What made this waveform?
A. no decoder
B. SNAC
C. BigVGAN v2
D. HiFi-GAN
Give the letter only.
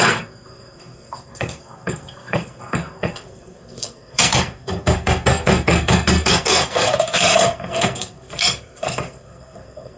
B